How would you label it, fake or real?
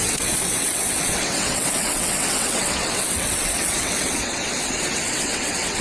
fake